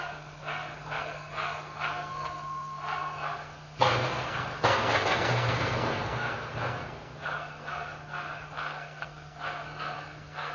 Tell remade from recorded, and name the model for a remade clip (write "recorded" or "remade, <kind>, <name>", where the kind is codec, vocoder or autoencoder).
remade, codec, SNAC